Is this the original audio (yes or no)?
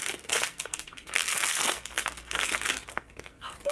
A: no